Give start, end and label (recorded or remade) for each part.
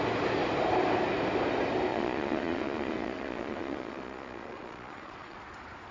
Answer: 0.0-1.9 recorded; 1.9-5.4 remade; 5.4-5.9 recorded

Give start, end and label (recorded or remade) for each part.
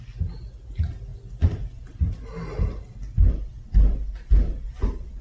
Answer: 0.0-5.2 recorded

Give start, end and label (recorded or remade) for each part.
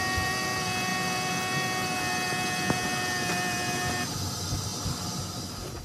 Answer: 0.0-5.8 recorded